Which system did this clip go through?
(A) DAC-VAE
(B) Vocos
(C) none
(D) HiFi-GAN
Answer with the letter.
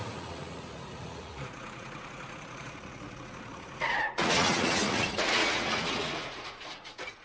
B